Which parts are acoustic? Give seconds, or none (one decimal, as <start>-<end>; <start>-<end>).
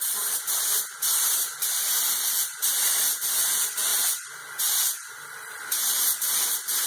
0.0-6.9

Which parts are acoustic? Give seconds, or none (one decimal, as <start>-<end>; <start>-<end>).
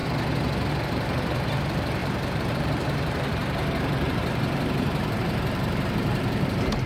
0.0-0.7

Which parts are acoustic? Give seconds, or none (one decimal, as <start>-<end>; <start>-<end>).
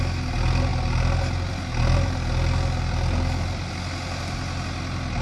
0.0-5.2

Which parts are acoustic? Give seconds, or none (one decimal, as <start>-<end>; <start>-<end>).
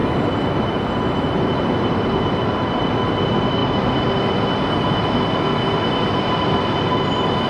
0.0-7.5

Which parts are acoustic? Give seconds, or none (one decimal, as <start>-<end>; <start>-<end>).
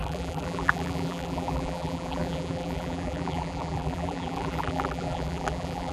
none